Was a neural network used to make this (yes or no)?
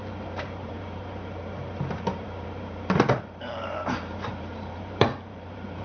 yes